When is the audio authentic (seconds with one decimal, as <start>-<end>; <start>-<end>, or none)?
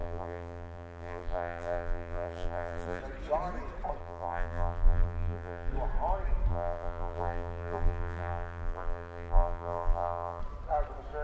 3.0-4.0; 5.7-6.5; 10.4-11.2